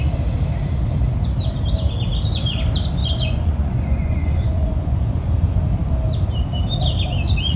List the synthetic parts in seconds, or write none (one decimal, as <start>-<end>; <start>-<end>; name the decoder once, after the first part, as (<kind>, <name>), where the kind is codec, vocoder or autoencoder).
3.0-5.0 (vocoder, Vocos)